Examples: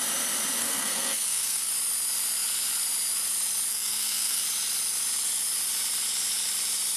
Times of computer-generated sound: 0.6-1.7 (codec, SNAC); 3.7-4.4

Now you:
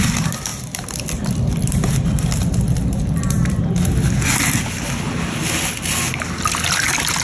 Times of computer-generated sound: none

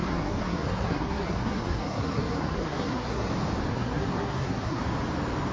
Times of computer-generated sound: 0.0-3.3 (codec, SNAC); 3.7-4.8

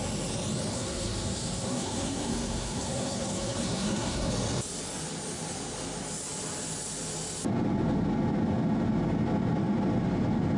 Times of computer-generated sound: 0.7-4.3 (codec, SNAC)

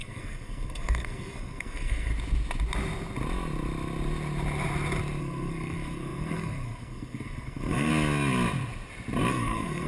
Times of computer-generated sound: 0.0-2.1 (codec, SNAC); 5.2-7.9; 9.3-9.9

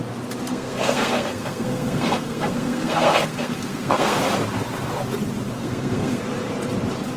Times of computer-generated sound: 0.5-4.2 (codec, SNAC); 5.6-6.2

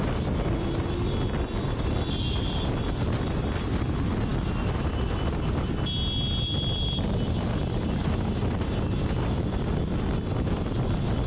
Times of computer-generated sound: none